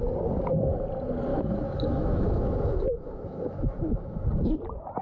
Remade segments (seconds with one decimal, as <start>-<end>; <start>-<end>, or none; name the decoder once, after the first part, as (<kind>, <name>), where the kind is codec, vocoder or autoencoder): 1.3-4.3 (autoencoder, DAC-VAE)